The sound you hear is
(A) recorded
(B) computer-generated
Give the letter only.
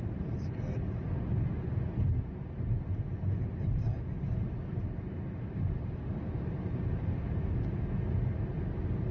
A